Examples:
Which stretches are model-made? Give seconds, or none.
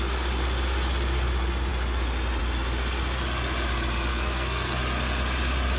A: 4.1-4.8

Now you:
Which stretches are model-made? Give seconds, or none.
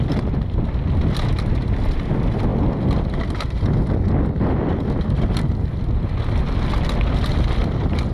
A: none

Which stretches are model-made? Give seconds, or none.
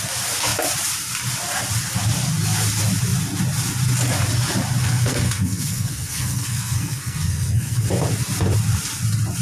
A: 4.8-7.9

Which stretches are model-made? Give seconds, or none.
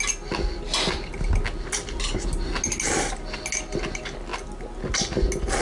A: none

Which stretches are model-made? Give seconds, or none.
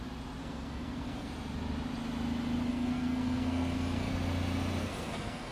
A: 0.4-1.3; 2.7-4.1; 4.8-5.5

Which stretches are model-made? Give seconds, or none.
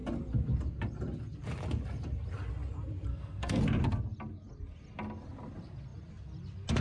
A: 3.1-3.6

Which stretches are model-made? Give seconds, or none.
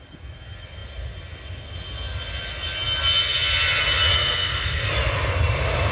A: 4.1-4.9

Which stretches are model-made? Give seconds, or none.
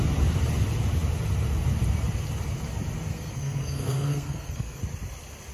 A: 3.1-4.8